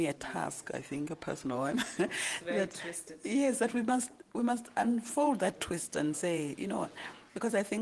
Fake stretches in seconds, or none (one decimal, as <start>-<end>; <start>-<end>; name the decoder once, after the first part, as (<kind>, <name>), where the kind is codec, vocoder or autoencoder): 0.0-7.8 (vocoder, Vocos)